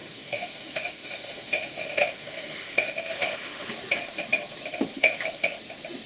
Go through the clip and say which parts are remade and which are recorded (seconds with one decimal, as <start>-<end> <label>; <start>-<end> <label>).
0.0-3.7 remade; 3.7-4.9 recorded; 4.9-5.6 remade; 5.6-6.1 recorded